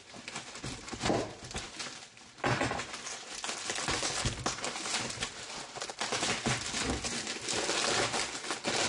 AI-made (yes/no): no